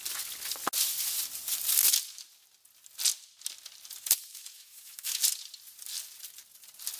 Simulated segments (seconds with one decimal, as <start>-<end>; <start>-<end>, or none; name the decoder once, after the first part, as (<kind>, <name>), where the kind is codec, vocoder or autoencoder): 4.3-5.2 (autoencoder, DAC-VAE)